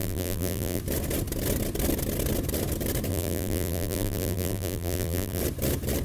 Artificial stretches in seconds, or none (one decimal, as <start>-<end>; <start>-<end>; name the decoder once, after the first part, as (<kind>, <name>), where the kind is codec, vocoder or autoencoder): 0.0-0.8 (vocoder, BigVGAN v2); 3.1-5.4